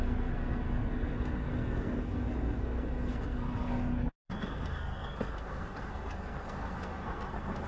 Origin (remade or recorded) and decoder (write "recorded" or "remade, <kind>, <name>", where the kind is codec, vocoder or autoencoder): remade, codec, SNAC